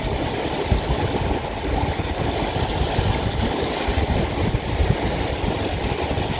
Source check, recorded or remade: recorded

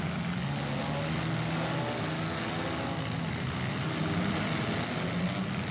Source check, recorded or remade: recorded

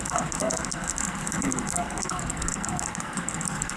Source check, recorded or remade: remade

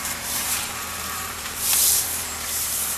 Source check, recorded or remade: remade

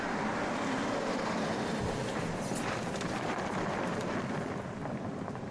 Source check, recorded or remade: remade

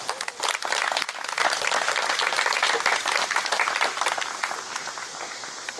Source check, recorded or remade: recorded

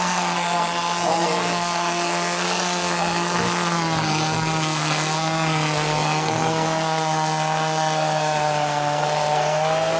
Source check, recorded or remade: remade